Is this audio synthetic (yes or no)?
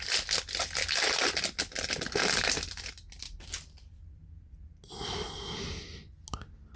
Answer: no